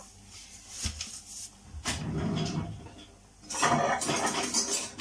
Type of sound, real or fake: real